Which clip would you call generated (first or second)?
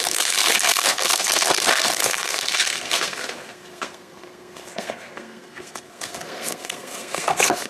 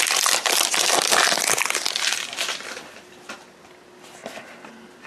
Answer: first